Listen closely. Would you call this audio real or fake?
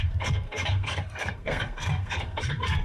fake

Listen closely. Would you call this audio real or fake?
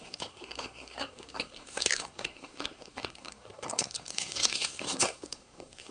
fake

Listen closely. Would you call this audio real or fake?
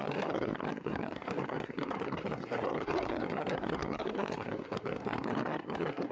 fake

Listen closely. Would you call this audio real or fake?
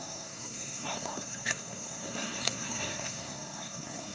fake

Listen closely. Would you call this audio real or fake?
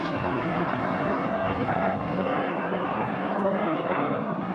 fake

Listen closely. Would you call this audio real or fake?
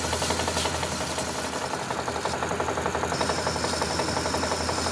real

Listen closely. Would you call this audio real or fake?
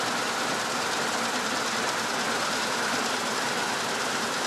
real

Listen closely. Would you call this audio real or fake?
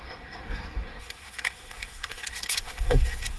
fake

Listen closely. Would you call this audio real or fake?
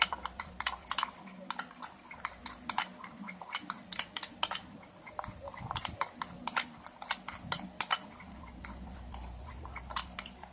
real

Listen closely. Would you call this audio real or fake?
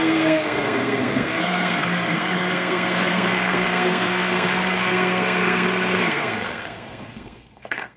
fake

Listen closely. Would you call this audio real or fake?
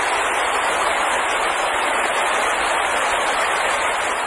real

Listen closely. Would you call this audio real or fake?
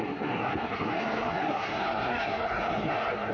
fake